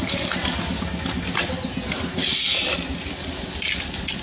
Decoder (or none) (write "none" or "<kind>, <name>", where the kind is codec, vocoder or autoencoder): none